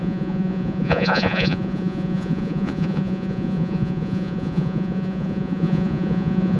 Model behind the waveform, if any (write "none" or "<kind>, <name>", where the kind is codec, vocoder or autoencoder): vocoder, Vocos